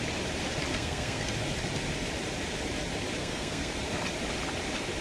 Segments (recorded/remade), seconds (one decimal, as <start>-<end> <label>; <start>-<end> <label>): 0.0-0.7 recorded; 0.7-1.3 remade; 1.3-3.2 recorded; 3.2-3.7 remade; 3.7-5.0 recorded